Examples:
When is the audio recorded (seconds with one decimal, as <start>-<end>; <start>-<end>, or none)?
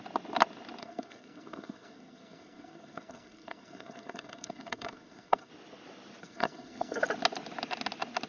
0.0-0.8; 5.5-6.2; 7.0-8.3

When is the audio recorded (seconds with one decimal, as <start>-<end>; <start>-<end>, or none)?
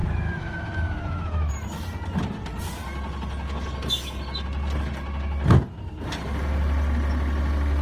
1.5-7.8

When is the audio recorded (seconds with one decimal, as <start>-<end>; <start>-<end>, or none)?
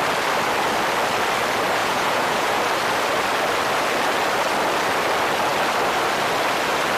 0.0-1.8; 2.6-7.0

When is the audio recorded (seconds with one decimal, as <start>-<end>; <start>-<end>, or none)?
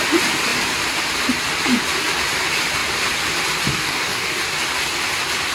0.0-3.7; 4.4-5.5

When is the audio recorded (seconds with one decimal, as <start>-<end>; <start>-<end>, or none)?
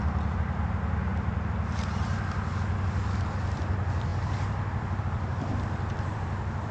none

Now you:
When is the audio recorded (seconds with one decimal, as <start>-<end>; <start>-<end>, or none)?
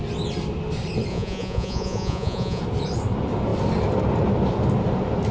0.0-1.1; 2.6-5.3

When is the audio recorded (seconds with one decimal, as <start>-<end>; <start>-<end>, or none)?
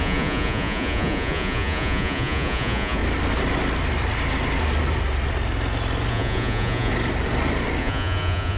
3.0-6.1; 6.9-7.8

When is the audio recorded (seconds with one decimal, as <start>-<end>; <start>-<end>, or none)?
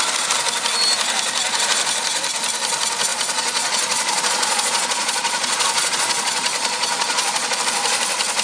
0.0-3.1; 7.6-8.4